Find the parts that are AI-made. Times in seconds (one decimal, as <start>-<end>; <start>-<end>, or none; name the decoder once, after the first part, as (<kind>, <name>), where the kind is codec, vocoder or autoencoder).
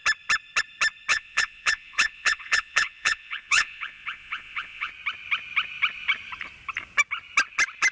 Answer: 1.1-4.9 (vocoder, Vocos)